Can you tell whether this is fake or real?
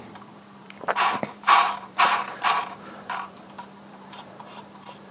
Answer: fake